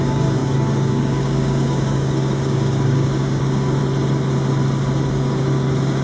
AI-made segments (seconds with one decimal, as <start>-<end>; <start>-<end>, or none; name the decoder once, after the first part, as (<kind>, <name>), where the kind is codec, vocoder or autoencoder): 0.0-3.8 (codec, DAC); 5.1-6.0